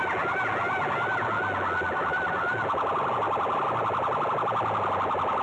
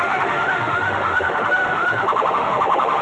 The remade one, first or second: second